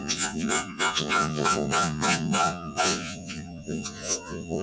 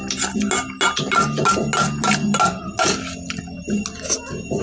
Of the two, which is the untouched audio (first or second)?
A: second